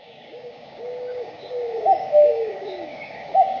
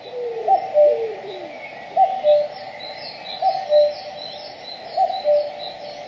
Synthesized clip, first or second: first